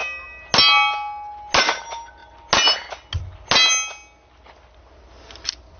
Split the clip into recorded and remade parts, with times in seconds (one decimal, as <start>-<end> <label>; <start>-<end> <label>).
0.0-5.8 recorded